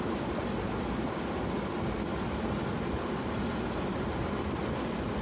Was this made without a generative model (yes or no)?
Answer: yes